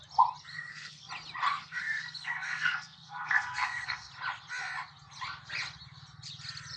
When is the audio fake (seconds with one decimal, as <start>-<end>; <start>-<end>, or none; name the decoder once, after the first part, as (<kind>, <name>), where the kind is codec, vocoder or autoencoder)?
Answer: 0.5-1.1 (codec, SNAC); 1.5-4.1